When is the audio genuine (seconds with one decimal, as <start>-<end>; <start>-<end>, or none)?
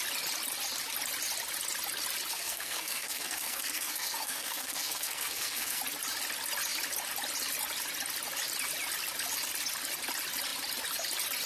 0.0-2.3; 5.8-11.5